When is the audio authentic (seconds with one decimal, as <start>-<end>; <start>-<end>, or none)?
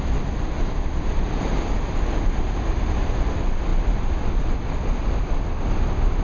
0.0-6.2